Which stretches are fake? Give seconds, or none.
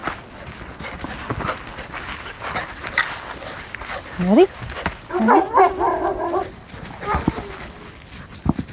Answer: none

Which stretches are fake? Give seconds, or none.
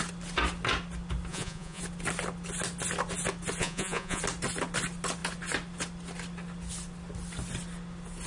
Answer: 1.3-1.8 (vocoder, Vocos); 3.6-4.2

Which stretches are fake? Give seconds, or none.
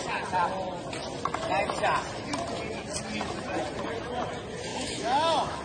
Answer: 4.7-5.6 (autoencoder, DAC-VAE)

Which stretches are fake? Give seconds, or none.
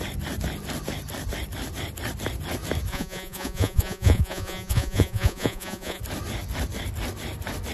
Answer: 2.9-6.0 (vocoder, Vocos)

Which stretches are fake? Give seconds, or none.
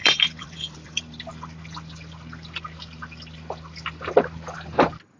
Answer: 0.0-1.3 (vocoder, BigVGAN v2)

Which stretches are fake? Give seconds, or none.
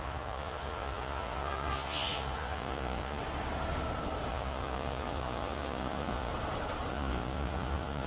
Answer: 0.0-3.2 (vocoder, Vocos); 4.3-6.3; 6.9-8.1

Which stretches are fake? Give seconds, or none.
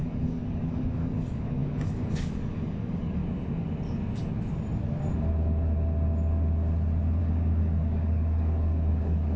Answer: 0.0-3.2 (codec, DAC); 7.2-9.4